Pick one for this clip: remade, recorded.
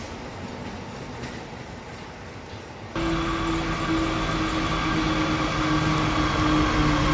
recorded